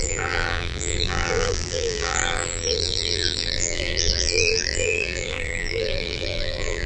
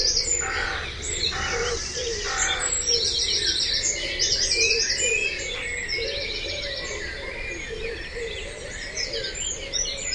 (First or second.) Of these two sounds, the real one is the second